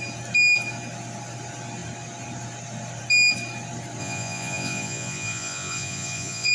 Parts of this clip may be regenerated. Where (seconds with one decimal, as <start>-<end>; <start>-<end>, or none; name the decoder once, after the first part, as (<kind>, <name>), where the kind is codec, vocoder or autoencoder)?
4.0-6.5 (vocoder, Vocos)